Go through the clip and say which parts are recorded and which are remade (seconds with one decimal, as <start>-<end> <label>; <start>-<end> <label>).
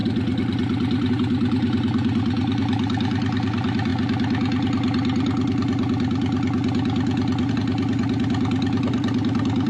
0.0-1.1 recorded; 1.1-3.9 remade; 3.9-7.5 recorded; 7.5-9.7 remade